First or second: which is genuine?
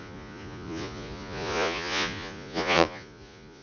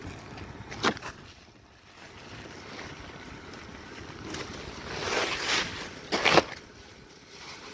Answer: second